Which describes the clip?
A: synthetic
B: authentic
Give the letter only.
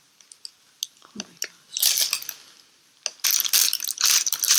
B